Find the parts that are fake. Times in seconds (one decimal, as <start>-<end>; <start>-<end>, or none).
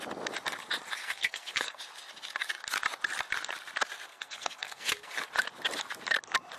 1.0-1.8; 4.1-5.1